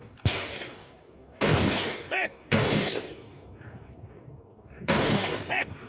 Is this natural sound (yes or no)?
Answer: no